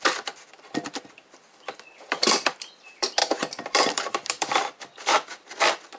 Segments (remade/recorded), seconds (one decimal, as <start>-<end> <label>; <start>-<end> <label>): 0.0-6.0 remade